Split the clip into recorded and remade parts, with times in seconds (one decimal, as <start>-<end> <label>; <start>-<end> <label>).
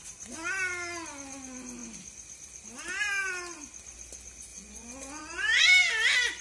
0.0-4.5 recorded; 4.5-5.6 remade; 5.6-6.4 recorded